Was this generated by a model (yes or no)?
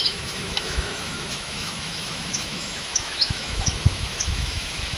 yes